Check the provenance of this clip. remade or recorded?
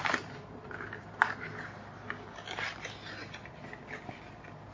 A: recorded